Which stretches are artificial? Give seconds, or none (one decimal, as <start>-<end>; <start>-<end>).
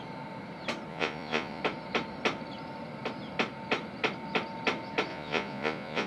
0.9-1.6; 5.1-6.1